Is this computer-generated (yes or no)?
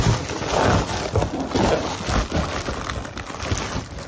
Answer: no